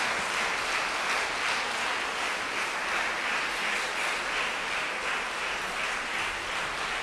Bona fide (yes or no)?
yes